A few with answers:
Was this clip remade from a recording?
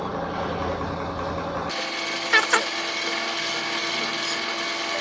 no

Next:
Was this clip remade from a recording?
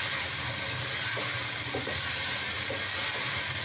no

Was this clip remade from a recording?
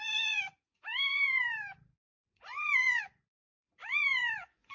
yes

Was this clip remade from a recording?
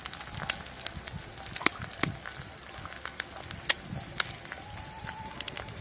no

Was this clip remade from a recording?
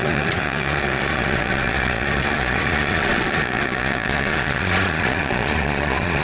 yes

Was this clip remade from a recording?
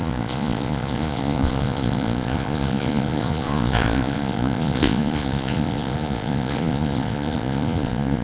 yes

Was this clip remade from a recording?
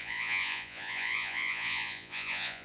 yes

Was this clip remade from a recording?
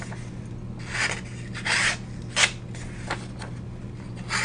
no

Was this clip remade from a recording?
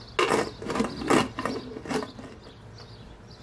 no